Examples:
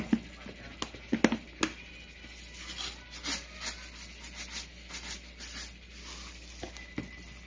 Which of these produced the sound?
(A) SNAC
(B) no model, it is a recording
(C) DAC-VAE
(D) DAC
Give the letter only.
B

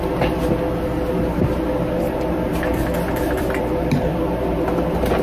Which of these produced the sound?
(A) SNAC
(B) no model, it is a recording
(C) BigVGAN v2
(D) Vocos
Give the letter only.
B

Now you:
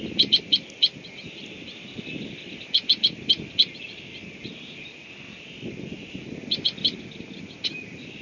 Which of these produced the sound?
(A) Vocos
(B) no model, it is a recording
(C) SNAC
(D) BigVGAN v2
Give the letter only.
B